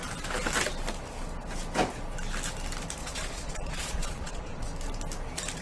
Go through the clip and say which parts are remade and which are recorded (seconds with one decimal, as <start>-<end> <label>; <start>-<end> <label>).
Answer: 0.0-3.0 recorded; 3.0-4.6 remade; 4.6-5.6 recorded